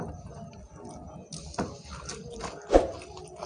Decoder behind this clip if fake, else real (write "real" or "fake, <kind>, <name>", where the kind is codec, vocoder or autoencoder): real